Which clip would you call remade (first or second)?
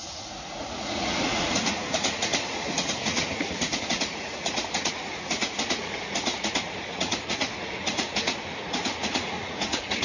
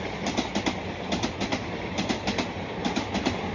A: first